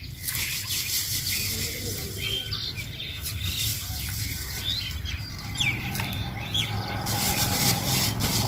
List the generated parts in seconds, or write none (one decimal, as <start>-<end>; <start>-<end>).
3.7-7.6